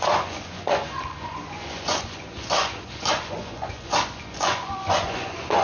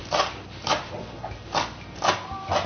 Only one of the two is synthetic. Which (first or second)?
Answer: first